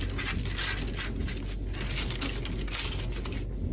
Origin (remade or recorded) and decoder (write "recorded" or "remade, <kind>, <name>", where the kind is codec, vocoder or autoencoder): recorded